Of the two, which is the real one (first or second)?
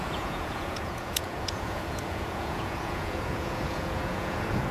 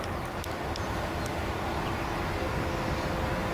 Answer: second